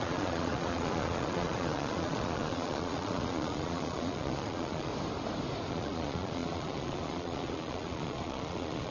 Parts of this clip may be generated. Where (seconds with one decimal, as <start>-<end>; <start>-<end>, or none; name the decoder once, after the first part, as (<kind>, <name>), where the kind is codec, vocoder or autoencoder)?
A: 0.0-4.9 (vocoder, Vocos); 5.7-8.9

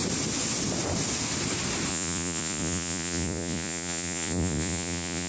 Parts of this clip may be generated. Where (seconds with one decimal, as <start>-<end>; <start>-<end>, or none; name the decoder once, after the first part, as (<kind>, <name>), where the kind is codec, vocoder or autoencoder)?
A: 1.9-5.3 (vocoder, Vocos)

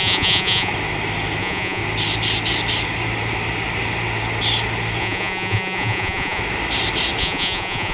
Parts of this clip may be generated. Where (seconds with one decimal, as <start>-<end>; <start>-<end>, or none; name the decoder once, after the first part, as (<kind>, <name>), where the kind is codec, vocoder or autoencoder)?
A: 0.0-0.7 (vocoder, Vocos); 1.4-1.8; 5.0-6.4; 7.2-7.9

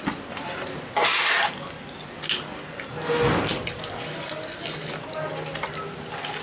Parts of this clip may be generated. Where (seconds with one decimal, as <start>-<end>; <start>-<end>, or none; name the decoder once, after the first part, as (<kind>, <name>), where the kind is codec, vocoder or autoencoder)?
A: none

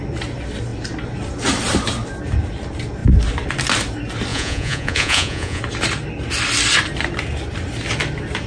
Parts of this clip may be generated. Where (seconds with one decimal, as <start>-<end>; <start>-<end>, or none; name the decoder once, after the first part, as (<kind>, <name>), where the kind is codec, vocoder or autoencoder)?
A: 4.3-5.6 (vocoder, Vocos)